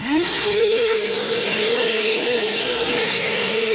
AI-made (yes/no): yes